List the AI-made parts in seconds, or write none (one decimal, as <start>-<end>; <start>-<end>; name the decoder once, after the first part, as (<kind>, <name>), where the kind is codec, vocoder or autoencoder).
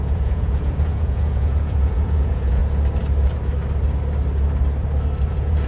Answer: 0.0-2.6 (vocoder, Vocos); 5.3-5.7